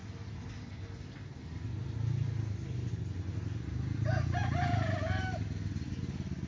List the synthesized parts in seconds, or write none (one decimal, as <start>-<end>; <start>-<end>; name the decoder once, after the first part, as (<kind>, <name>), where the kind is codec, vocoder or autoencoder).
none